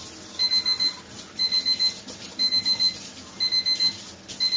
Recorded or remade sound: recorded